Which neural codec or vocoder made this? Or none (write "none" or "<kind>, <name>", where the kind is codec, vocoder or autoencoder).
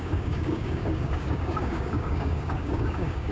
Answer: codec, DAC